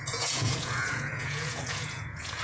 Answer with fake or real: fake